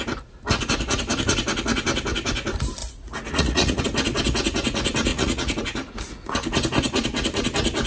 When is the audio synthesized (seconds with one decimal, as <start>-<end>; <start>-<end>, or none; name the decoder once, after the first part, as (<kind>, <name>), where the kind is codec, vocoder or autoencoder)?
2.8-3.8 (vocoder, Vocos); 5.1-5.6